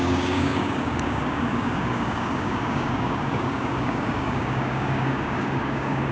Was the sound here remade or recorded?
remade